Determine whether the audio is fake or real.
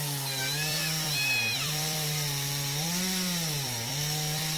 fake